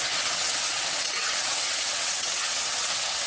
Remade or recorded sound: remade